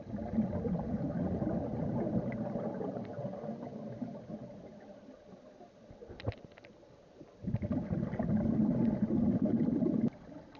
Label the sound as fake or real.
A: real